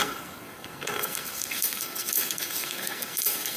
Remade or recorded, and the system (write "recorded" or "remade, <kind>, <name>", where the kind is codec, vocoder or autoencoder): remade, codec, SNAC